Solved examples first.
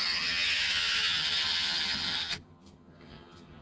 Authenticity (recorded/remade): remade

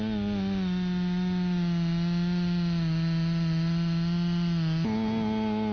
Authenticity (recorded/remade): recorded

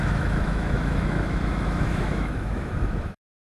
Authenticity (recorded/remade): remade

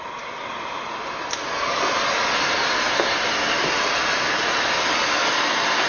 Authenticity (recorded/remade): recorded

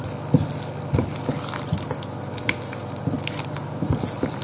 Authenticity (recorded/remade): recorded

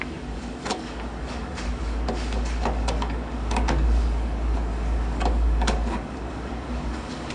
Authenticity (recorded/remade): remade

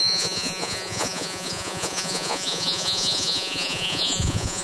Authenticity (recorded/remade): remade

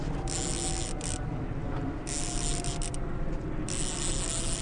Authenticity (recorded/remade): recorded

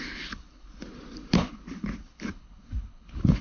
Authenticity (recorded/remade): remade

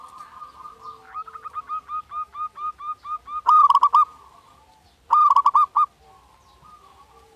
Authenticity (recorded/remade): recorded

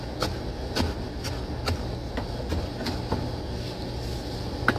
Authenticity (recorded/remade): recorded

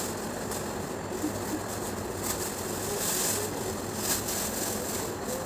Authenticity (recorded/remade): recorded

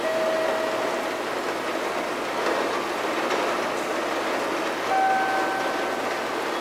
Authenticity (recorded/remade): recorded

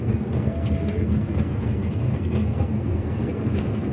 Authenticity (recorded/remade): remade